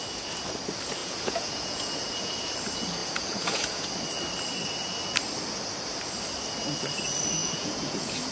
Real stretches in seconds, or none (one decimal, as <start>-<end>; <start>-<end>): 0.0-1.0; 2.4-3.0; 3.9-7.4